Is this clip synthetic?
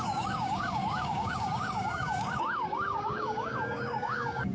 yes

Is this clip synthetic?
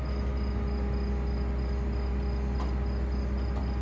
no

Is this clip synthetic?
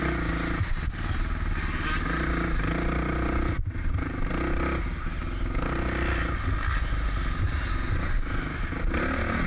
no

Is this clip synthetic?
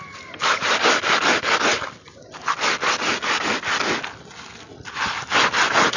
no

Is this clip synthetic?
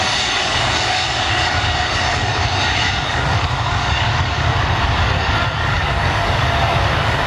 yes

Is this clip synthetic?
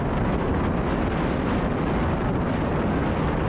no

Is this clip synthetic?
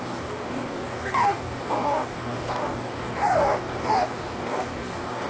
yes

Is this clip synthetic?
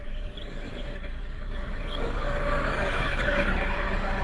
yes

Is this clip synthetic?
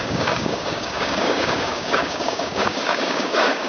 yes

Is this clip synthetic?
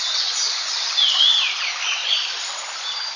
no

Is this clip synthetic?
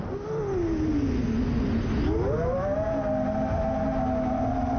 no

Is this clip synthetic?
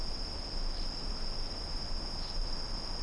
no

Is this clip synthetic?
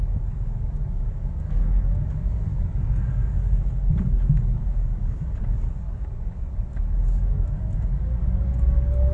yes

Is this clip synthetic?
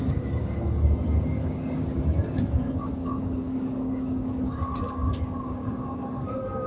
yes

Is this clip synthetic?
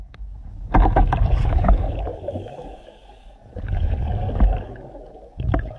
yes